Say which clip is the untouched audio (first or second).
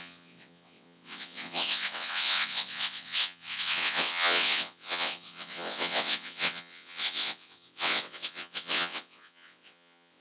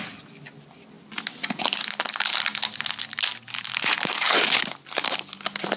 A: second